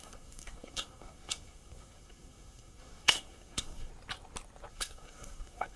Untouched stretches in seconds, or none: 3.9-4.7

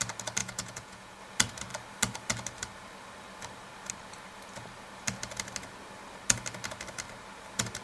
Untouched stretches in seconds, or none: 0.0-0.4; 1.2-7.8

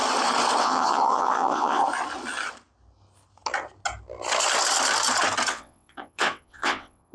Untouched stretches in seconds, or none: 0.0-0.6; 1.8-5.5

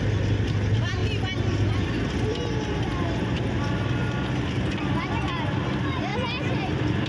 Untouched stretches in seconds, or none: 0.0-7.1

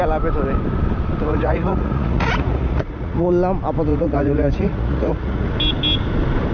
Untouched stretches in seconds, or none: 0.0-1.3; 3.3-3.9; 5.5-6.5

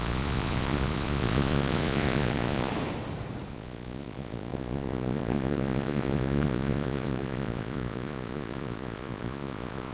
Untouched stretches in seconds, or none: 2.7-3.5

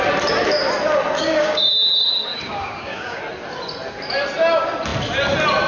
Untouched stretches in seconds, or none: 0.0-1.2; 1.7-2.3; 3.2-5.7

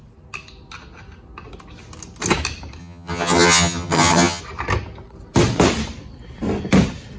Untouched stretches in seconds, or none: 0.0-2.8; 4.4-7.2